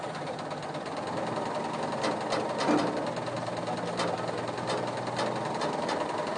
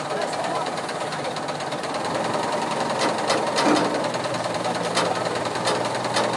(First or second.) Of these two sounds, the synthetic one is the second